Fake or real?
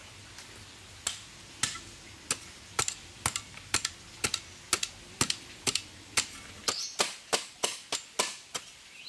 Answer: real